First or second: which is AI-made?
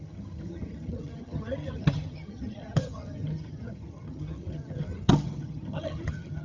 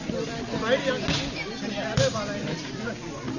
first